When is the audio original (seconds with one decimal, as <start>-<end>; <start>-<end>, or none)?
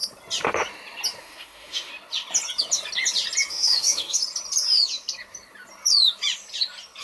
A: 0.0-1.2; 1.9-3.5; 4.2-7.0